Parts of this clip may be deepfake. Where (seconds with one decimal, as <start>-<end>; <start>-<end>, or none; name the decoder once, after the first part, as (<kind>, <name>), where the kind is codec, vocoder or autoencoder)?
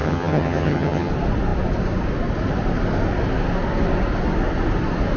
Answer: 0.0-1.1 (vocoder, HiFi-GAN)